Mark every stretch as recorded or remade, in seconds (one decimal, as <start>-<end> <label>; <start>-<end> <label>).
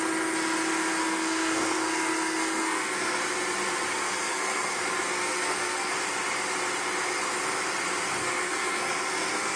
0.0-1.0 recorded; 1.0-3.2 remade; 3.2-4.0 recorded; 4.0-4.7 remade; 4.7-5.2 recorded; 5.2-5.9 remade; 5.9-8.2 recorded; 8.2-9.6 remade